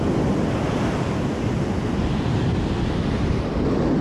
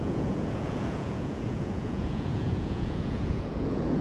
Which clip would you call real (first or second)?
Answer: first